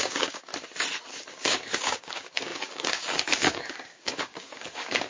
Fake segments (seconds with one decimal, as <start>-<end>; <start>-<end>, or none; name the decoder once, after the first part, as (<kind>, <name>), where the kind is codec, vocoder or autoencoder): 0.0-0.5 (codec, DAC); 1.1-5.1